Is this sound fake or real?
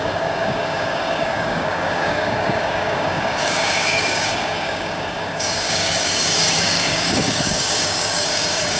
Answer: fake